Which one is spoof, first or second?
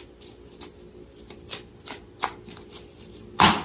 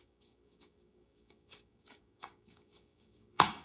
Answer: second